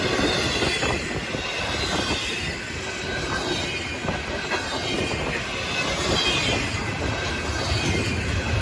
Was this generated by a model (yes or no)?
no